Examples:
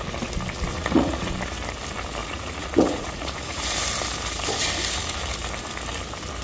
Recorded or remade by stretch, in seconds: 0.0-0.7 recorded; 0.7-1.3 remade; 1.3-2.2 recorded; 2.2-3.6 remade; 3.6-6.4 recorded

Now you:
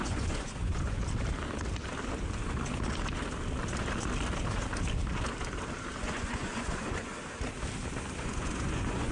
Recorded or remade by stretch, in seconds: 0.0-1.0 remade; 1.0-6.0 recorded; 6.0-7.1 remade; 7.1-8.2 recorded; 8.2-9.1 remade